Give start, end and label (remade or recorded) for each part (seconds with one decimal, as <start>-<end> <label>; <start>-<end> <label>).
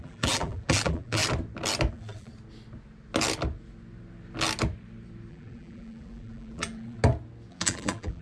0.0-1.2 remade; 1.2-1.9 recorded; 1.9-2.3 remade; 2.3-5.3 recorded; 5.3-7.0 remade; 7.0-7.5 recorded; 7.5-8.2 remade